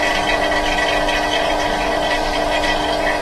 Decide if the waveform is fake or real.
real